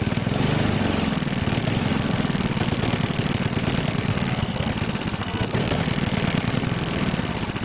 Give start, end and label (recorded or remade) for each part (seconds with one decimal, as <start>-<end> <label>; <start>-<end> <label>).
0.0-4.1 recorded; 4.1-4.7 remade; 4.7-5.2 recorded; 5.2-5.8 remade; 5.8-7.6 recorded